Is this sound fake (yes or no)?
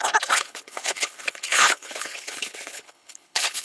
yes